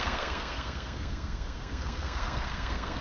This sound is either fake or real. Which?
fake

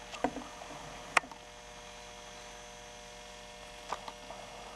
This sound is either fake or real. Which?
real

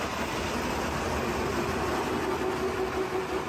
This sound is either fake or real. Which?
real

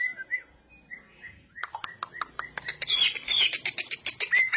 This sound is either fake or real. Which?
real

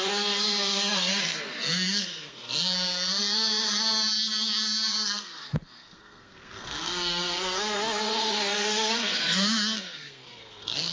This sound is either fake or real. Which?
fake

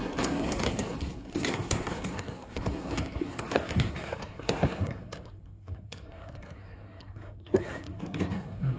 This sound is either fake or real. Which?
fake